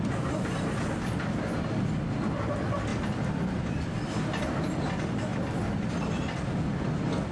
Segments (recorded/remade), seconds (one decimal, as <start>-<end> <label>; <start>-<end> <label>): 0.0-7.3 recorded